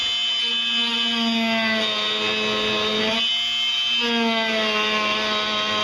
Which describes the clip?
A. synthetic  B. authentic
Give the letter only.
B